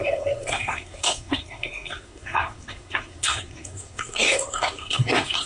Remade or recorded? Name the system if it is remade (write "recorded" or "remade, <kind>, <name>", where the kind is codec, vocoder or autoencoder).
remade, codec, SNAC